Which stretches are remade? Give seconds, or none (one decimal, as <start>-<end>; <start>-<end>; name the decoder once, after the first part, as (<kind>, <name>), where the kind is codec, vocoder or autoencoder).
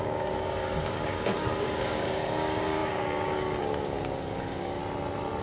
0.0-4.8 (codec, DAC)